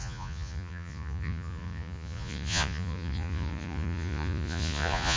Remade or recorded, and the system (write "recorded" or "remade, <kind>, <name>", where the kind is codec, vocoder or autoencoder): remade, vocoder, Vocos